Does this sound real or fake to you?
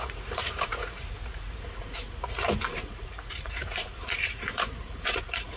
fake